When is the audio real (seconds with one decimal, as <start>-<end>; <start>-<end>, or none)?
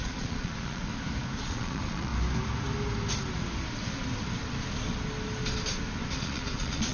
0.9-1.4; 2.1-6.1